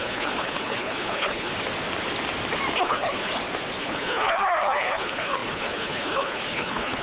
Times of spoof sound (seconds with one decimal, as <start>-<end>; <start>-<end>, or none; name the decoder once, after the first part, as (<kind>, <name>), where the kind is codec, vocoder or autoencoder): 0.0-1.5 (codec, HILCodec); 2.8-3.3; 3.8-7.0